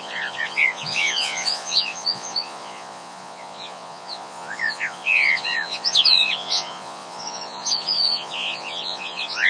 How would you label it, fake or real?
fake